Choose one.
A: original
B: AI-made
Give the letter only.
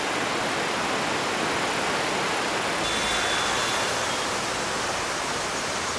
A